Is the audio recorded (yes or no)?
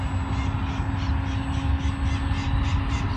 yes